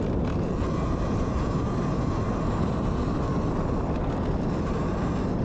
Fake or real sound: real